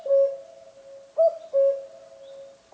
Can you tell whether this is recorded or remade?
recorded